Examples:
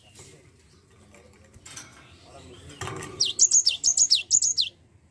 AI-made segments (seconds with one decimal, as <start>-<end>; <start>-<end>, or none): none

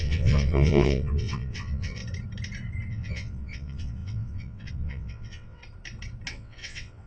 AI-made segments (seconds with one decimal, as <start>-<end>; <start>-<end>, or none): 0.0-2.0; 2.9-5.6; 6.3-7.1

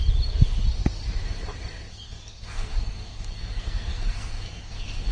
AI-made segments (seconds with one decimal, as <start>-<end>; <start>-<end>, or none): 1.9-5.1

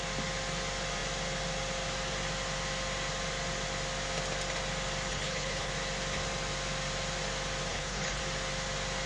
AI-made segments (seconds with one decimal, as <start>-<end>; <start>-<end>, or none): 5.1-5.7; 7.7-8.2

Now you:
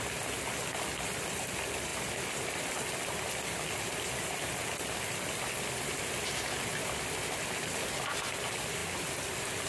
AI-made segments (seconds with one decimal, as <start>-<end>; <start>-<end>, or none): none

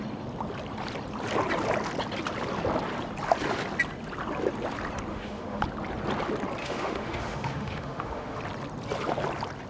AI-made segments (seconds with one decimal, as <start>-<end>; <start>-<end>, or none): 5.1-5.6; 6.6-8.4

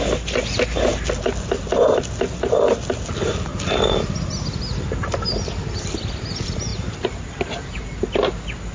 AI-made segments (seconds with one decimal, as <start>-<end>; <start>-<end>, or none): none

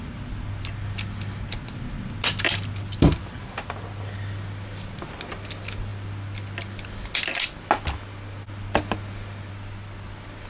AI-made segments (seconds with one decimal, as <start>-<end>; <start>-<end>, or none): none